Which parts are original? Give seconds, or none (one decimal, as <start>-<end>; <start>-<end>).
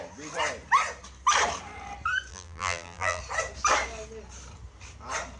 0.0-2.3; 3.2-5.4